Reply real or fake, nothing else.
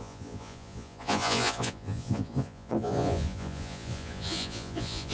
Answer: fake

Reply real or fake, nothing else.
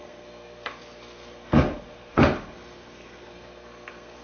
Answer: fake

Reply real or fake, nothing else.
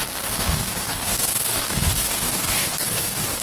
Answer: fake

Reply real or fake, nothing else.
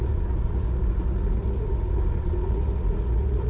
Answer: fake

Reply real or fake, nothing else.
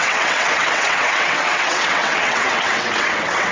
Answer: fake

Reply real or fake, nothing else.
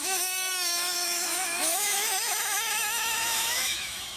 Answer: fake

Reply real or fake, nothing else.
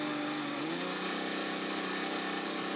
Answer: real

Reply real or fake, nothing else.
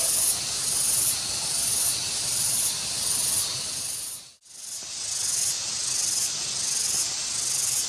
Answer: real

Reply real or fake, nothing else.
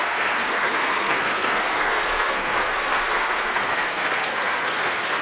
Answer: fake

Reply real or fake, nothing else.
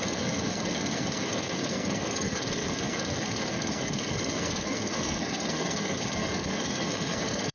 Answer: fake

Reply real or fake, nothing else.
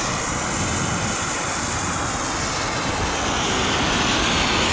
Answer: real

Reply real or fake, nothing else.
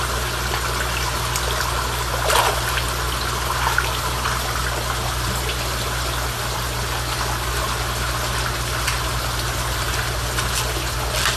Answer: real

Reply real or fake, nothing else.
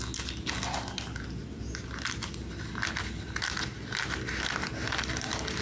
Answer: real